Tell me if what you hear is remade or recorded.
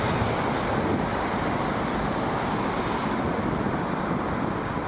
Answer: recorded